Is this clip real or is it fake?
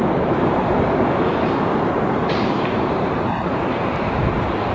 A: fake